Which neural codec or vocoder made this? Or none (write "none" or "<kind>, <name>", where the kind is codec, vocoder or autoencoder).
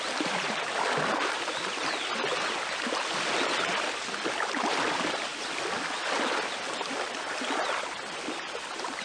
none